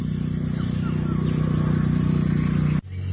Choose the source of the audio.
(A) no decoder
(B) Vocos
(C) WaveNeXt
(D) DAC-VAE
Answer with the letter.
A